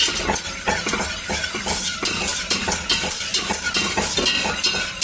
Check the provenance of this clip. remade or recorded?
remade